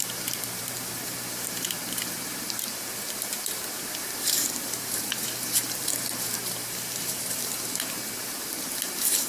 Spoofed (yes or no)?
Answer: yes